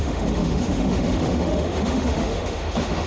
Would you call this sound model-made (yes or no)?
yes